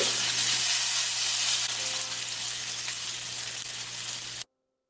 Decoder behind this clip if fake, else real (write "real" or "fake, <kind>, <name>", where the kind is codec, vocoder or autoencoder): real